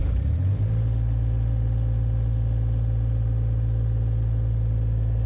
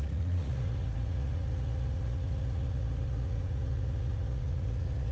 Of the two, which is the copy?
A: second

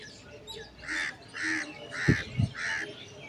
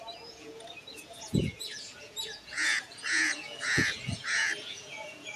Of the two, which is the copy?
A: second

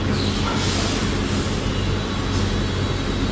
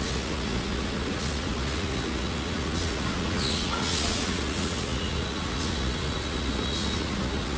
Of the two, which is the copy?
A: second